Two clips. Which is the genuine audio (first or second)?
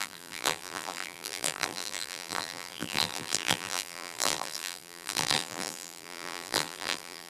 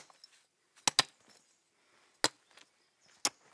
second